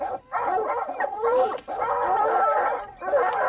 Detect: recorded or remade recorded